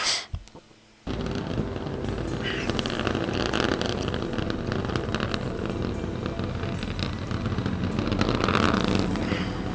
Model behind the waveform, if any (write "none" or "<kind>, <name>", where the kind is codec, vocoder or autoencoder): none